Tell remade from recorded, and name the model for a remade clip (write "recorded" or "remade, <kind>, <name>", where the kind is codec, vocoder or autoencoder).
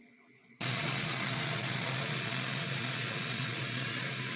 remade, vocoder, Vocos